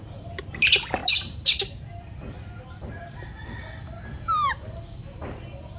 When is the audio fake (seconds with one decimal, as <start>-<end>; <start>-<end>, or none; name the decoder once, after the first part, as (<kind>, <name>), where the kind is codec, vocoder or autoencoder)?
none